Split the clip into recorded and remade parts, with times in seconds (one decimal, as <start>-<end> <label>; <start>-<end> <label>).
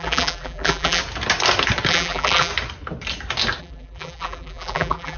0.0-1.0 remade; 1.0-1.9 recorded; 1.9-2.5 remade; 2.5-3.6 recorded; 3.6-5.2 remade